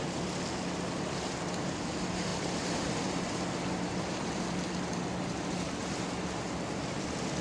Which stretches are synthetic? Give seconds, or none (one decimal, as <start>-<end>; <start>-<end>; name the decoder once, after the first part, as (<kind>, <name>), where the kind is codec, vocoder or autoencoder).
none